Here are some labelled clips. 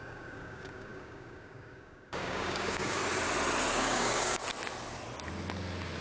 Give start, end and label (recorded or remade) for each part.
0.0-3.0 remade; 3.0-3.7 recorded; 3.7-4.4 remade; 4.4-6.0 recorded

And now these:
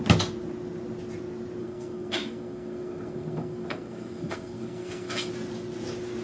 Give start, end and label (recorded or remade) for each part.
0.0-1.6 recorded; 1.6-5.3 remade; 5.3-6.2 recorded

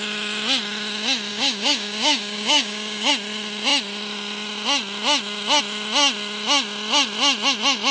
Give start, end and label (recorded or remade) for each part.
0.0-1.3 recorded; 1.3-3.1 remade; 3.1-7.9 recorded

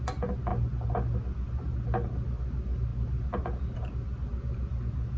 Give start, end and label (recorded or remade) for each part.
0.0-5.2 recorded

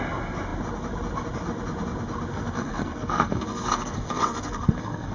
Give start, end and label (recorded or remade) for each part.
0.0-2.3 recorded; 2.3-5.1 remade

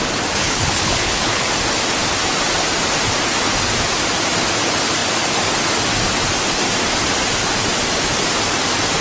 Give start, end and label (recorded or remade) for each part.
0.0-0.4 recorded; 0.4-1.5 remade; 1.5-9.0 recorded